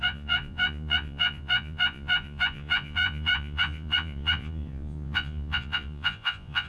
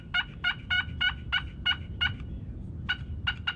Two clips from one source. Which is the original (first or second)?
second